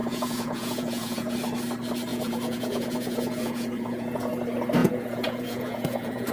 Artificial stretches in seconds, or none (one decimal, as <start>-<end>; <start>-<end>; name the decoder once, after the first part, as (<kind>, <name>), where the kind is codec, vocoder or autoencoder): 0.0-1.3 (vocoder, Vocos); 2.1-4.3; 4.8-6.3